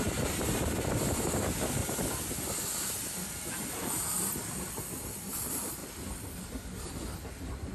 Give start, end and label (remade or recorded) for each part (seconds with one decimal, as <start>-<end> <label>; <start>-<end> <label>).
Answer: 0.0-1.8 remade; 1.8-3.5 recorded; 3.5-4.3 remade; 4.3-5.2 recorded; 5.2-5.8 remade; 5.8-7.3 recorded; 7.3-7.7 remade